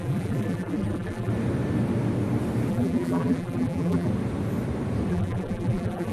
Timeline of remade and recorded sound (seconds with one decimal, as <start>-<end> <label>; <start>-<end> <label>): 0.0-1.3 remade; 1.3-2.7 recorded; 2.7-4.1 remade; 4.1-5.1 recorded; 5.1-6.1 remade